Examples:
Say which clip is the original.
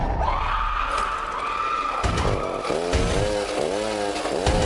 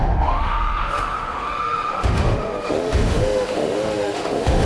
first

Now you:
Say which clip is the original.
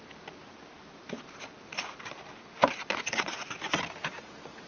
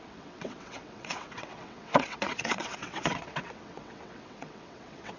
first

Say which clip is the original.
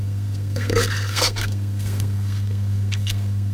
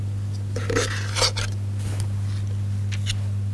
second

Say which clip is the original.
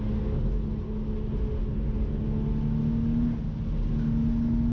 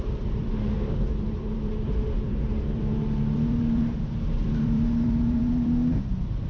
first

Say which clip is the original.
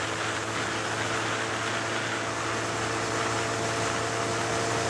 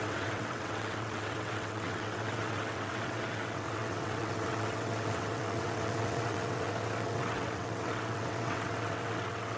first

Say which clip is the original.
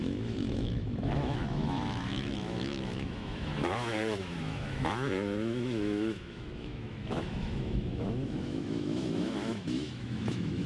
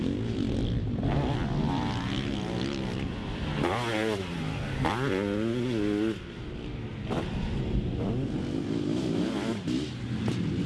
second